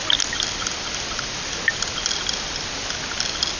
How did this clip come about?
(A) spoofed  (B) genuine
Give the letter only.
B